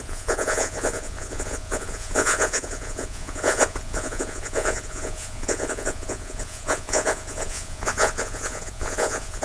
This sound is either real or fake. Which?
fake